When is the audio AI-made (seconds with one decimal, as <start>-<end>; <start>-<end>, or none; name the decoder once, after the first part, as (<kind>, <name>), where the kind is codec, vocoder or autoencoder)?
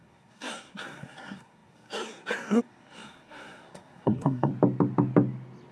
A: 0.0-4.5 (codec, SNAC)